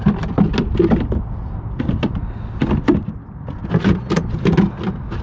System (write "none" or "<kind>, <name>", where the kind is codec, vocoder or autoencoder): none